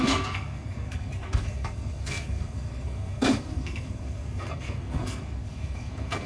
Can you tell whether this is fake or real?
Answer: fake